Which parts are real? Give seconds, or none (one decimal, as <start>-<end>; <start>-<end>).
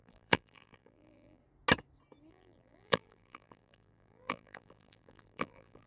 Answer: 1.4-2.3